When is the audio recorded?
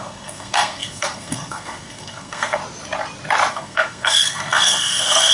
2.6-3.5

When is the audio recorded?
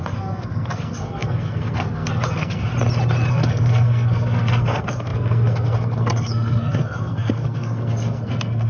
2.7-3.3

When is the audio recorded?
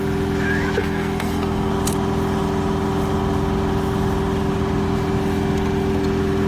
0.0-0.8; 1.7-6.5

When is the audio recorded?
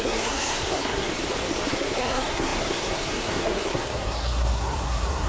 1.1-1.7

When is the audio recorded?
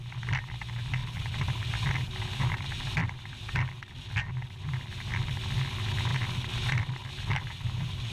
0.0-8.1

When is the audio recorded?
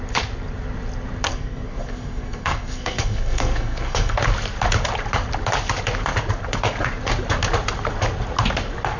0.0-1.3; 4.2-9.0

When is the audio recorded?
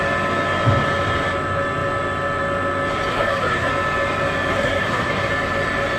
0.0-3.1; 3.7-4.5; 5.3-6.0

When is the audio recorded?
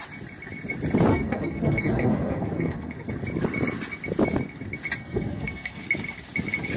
0.0-1.1; 3.1-5.0; 5.8-6.8